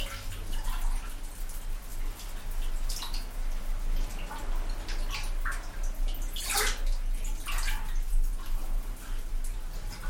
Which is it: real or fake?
real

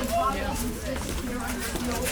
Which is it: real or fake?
fake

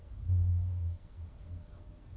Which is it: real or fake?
fake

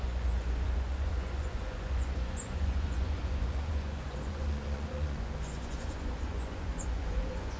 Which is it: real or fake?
fake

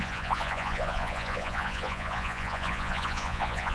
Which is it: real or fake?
fake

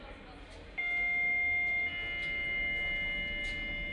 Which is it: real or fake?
real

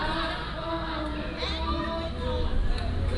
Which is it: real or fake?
real